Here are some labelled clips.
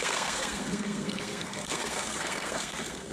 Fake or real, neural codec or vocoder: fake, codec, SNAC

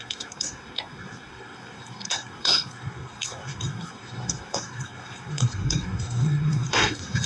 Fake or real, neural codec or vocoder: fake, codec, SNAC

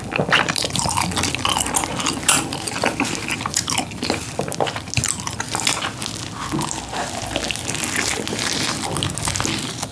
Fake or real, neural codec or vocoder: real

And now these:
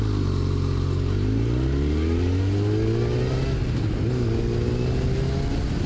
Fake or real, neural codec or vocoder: real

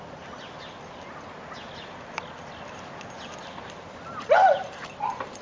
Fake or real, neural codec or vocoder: real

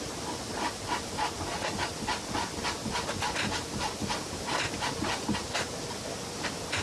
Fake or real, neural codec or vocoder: real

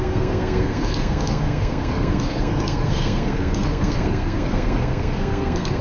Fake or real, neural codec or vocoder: fake, codec, SNAC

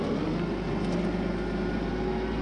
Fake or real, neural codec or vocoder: real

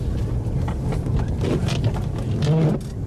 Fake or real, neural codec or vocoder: real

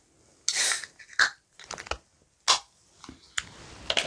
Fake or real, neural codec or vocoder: real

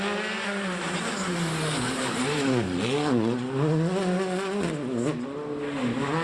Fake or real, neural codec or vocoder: real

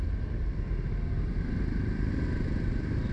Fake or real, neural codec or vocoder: real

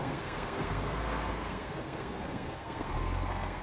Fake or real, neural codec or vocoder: fake, codec, SNAC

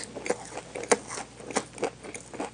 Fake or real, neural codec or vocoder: real